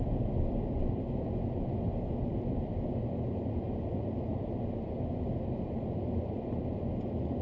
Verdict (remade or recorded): recorded